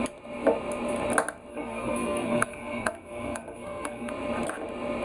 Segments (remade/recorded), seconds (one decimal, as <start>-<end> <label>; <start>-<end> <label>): 0.0-1.5 recorded; 1.5-4.1 remade; 4.1-5.0 recorded